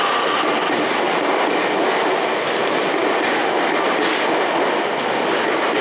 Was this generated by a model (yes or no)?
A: no